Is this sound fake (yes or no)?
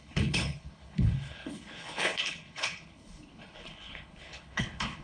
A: yes